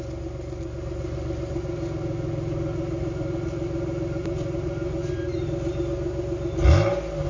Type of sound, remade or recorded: recorded